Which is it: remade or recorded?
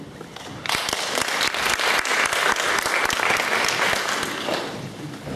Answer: recorded